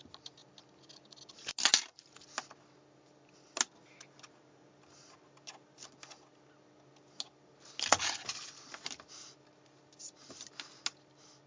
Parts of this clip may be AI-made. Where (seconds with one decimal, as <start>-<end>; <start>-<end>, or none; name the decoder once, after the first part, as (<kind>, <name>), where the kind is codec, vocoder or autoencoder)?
none